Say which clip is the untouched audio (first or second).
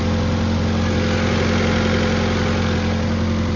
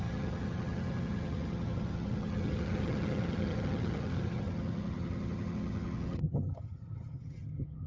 first